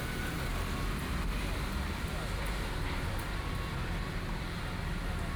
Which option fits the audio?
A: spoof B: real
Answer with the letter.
B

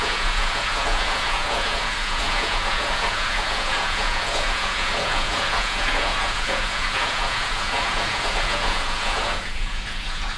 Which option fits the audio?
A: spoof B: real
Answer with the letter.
A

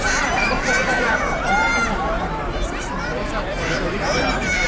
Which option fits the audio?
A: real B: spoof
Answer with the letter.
B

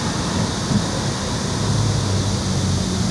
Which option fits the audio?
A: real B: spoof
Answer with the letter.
A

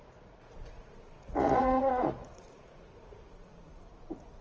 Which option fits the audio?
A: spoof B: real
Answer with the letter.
A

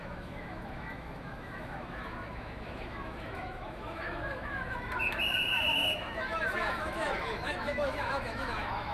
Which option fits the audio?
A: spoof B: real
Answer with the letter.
A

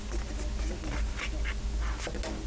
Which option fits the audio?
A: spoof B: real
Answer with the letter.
B